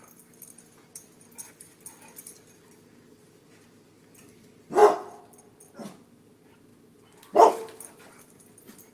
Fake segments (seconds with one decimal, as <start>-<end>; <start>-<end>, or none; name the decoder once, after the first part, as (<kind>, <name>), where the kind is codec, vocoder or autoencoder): 0.0-6.7 (vocoder, BigVGAN v2); 8.0-8.9